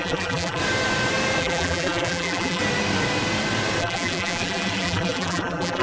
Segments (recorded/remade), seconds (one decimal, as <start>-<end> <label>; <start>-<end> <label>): 0.0-0.6 remade; 0.6-1.4 recorded; 1.4-2.6 remade; 2.6-3.8 recorded; 3.8-5.8 remade